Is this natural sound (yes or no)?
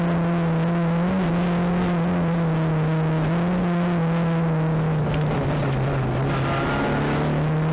yes